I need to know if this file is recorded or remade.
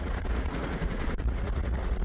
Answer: remade